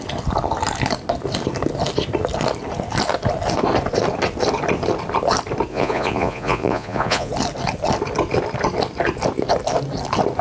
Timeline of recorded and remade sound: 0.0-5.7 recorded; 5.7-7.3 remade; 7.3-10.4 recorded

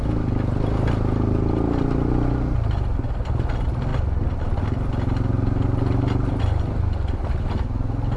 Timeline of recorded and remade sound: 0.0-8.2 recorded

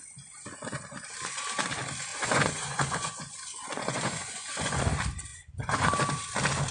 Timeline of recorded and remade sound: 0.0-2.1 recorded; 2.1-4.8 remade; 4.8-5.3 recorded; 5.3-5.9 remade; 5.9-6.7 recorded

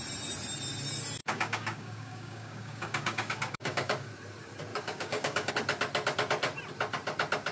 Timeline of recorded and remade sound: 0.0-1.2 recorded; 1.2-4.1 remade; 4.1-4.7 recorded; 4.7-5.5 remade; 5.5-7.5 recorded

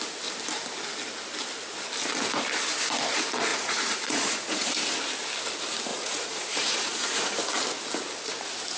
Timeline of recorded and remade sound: 0.0-3.5 recorded; 3.5-4.7 remade; 4.7-5.9 recorded; 5.9-7.4 remade; 7.4-8.8 recorded

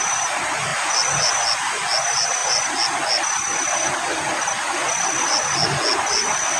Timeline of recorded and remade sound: 0.0-6.6 recorded

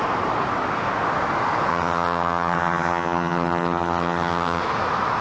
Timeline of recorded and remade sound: 0.0-1.7 recorded; 1.7-4.6 remade; 4.6-5.2 recorded